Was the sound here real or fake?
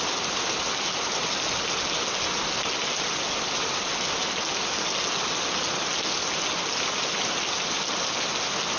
real